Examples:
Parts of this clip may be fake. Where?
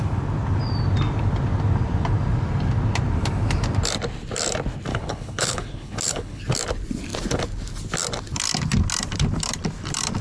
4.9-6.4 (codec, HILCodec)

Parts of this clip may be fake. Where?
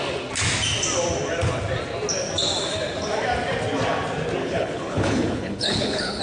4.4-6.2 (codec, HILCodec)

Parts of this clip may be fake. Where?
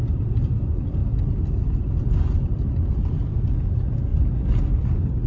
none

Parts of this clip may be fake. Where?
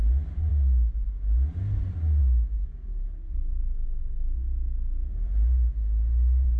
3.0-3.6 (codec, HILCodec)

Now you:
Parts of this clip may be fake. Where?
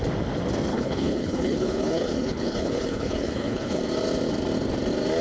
0.7-3.8 (codec, HILCodec)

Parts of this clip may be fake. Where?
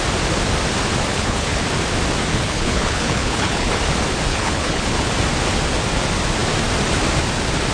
1.1-1.6 (codec, HILCodec); 2.3-3.8; 4.3-5.1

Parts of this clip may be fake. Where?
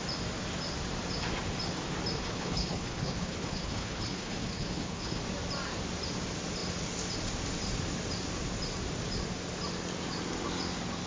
2.2-5.2 (codec, HILCodec)